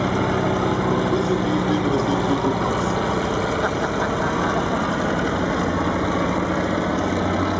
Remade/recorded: recorded